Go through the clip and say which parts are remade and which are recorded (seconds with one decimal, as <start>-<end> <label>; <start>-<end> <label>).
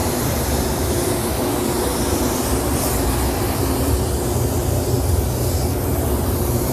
0.0-4.0 remade; 4.0-4.6 recorded; 4.6-5.6 remade; 5.6-6.7 recorded